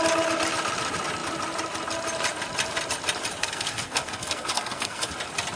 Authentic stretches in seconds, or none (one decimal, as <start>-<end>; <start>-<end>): 0.0-3.4; 5.1-5.6